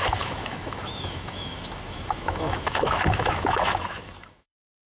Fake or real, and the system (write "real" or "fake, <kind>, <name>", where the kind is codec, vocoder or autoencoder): fake, autoencoder, DAC-VAE